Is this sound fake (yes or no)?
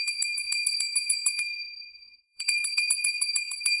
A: yes